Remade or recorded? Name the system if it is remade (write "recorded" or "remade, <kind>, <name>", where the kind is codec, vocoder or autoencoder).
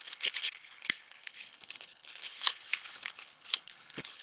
remade, codec, HILCodec